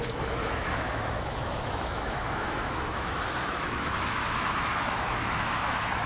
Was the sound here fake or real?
fake